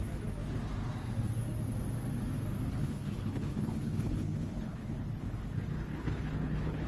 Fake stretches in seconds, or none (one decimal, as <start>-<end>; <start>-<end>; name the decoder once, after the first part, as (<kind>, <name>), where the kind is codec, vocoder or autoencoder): 2.7-6.9 (codec, HILCodec)